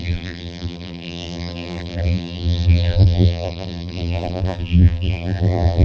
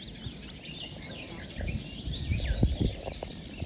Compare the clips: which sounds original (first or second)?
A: second